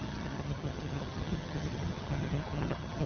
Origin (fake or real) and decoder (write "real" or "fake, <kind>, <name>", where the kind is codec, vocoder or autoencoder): fake, vocoder, HiFi-GAN